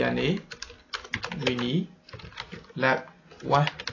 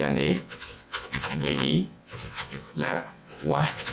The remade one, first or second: second